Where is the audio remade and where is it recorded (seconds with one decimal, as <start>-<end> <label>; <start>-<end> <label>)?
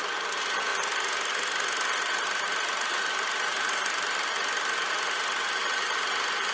0.0-6.5 recorded